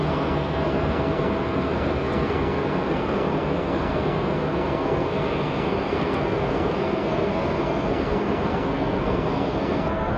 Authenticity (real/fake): fake